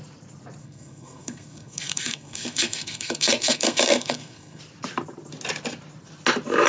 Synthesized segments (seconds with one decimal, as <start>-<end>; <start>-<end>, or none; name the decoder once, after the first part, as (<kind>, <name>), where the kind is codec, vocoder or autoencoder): 0.6-4.6 (codec, SNAC)